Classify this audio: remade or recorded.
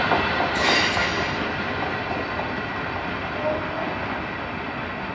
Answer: recorded